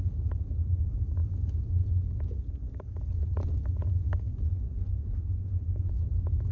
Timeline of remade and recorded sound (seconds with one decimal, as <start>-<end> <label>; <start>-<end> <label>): 0.0-4.3 recorded; 4.3-5.9 remade; 5.9-6.5 recorded